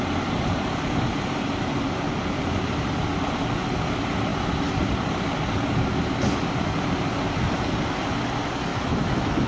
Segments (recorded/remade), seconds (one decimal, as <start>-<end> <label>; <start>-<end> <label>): 0.0-8.7 recorded; 8.7-9.5 remade